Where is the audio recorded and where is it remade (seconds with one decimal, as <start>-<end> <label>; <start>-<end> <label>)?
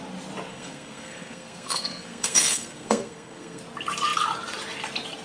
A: 0.0-0.5 recorded; 0.5-3.6 remade; 3.6-5.2 recorded